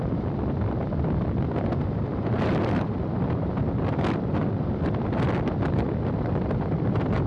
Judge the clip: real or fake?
fake